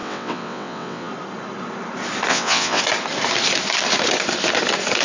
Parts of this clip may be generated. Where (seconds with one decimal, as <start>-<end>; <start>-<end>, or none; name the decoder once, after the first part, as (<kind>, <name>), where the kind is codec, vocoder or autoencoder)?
0.0-1.1 (vocoder, WaveNeXt); 2.3-2.8